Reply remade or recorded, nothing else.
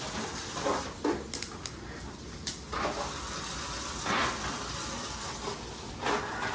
recorded